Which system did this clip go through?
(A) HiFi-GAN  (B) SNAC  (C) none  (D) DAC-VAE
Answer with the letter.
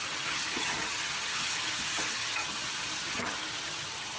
A